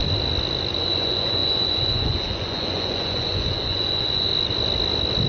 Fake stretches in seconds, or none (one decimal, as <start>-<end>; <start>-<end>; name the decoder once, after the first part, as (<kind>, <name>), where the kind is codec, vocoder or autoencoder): 0.8-4.3 (vocoder, Vocos)